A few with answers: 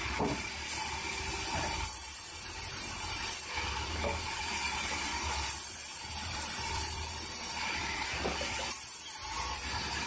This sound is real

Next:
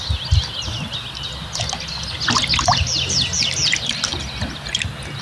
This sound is real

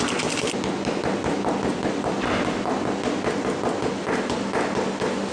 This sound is real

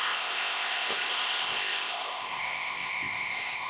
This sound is fake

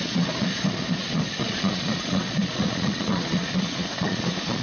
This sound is fake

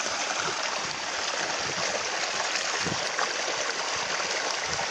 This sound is real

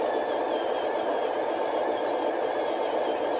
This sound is real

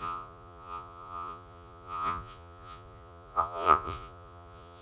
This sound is fake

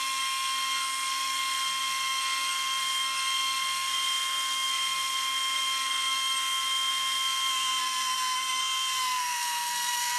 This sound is fake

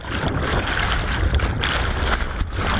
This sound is real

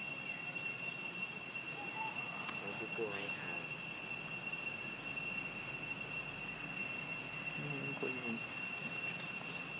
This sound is real